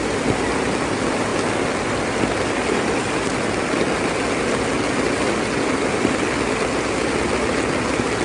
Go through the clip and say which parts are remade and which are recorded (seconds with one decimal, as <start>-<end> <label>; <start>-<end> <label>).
0.0-8.2 recorded